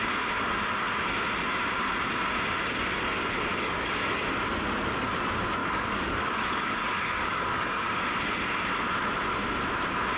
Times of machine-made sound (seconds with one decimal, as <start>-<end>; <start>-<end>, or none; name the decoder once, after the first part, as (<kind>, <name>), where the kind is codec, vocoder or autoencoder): 3.5-4.2 (codec, DAC); 5.6-7.9